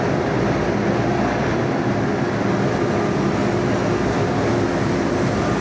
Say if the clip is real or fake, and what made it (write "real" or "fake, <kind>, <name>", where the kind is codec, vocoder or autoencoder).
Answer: real